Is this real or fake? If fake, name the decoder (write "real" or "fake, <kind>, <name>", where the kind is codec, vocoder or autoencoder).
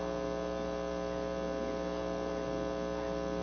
real